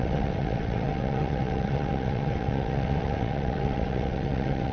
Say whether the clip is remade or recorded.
remade